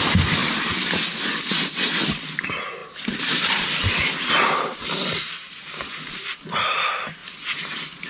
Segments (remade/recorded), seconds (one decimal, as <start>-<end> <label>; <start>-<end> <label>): 0.0-2.8 recorded; 2.8-3.4 remade; 3.4-8.1 recorded